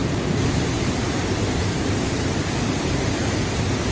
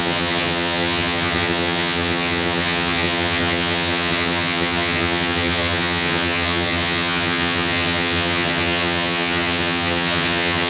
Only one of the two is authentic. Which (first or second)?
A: first